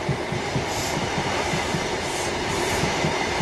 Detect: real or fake fake